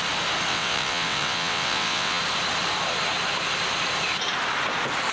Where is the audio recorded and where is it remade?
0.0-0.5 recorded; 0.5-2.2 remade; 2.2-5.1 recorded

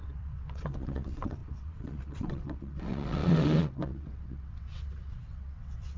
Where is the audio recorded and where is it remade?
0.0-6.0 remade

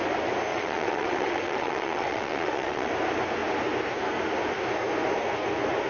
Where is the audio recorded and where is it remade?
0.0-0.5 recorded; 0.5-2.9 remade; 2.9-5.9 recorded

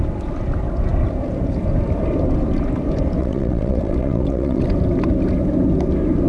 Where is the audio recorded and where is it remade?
0.0-3.2 recorded; 3.2-4.6 remade; 4.6-6.3 recorded

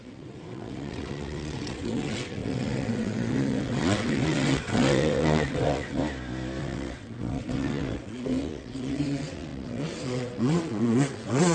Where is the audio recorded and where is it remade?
0.0-6.0 remade; 6.0-6.6 recorded; 6.6-11.5 remade